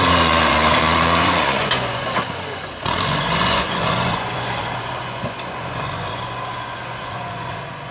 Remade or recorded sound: remade